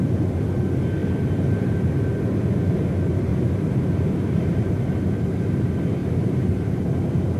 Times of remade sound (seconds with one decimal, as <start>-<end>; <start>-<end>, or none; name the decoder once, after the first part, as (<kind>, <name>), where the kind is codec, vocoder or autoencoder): 1.0-1.7 (vocoder, BigVGAN v2); 3.3-4.7; 6.0-6.8